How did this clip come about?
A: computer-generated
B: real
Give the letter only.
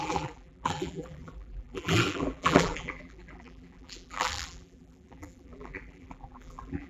A